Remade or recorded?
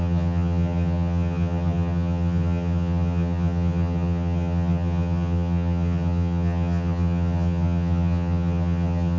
remade